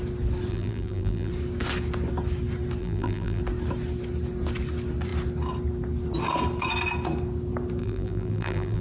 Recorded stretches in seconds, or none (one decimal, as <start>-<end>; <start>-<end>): 0.0-0.5; 1.3-2.8; 3.4-7.8